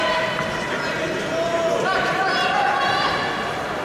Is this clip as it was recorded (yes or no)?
no